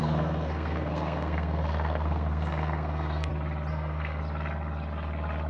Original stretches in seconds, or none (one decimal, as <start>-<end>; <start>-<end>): 3.3-3.7; 4.2-5.5